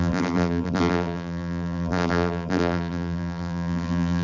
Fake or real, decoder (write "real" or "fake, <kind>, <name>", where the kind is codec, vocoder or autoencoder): fake, vocoder, BigVGAN v2